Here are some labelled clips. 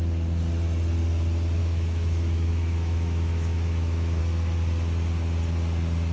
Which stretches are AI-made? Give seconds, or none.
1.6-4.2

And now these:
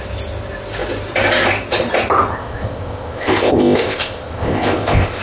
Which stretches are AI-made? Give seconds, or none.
2.3-5.2

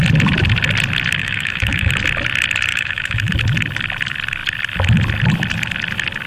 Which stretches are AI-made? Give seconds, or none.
1.2-1.9; 2.7-3.3

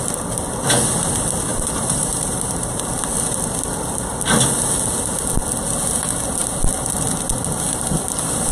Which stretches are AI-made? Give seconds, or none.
1.5-2.8

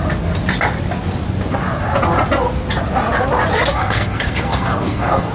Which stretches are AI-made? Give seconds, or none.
3.7-5.3

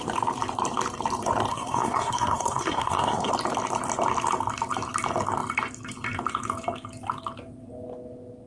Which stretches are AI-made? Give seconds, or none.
1.5-3.3

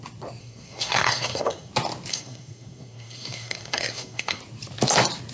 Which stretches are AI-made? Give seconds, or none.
0.4-1.7; 2.1-4.4

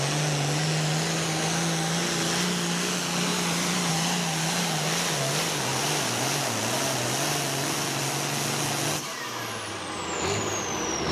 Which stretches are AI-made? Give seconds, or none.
3.3-3.9; 5.7-6.4